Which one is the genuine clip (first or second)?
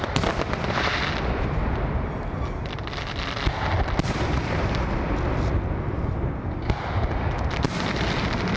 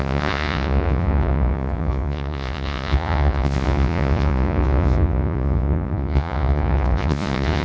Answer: first